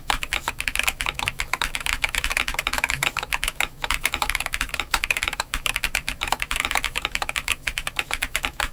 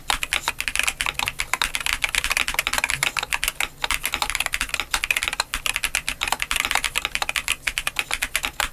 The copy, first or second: first